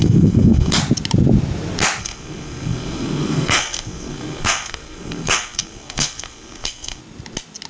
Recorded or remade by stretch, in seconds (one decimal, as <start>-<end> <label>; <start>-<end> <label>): 0.0-0.8 remade; 0.8-2.0 recorded; 2.0-7.0 remade; 7.0-7.7 recorded